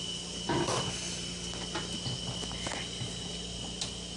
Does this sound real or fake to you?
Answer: real